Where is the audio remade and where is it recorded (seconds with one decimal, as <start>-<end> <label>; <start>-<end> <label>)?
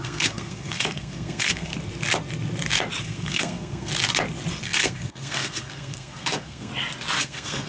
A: 0.0-1.7 remade; 1.7-3.0 recorded; 3.0-3.9 remade; 3.9-4.6 recorded; 4.6-6.7 remade; 6.7-7.2 recorded; 7.2-7.7 remade